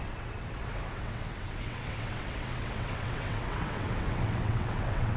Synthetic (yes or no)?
yes